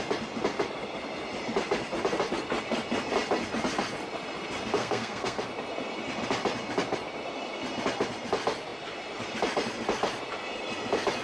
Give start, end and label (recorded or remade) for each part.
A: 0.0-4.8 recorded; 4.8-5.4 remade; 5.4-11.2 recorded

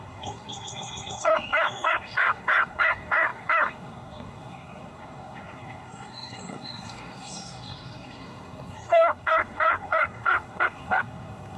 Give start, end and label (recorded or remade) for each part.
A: 0.0-11.6 remade

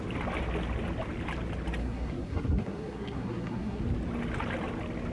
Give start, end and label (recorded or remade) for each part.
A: 0.0-1.8 recorded; 1.8-3.8 remade; 3.8-5.1 recorded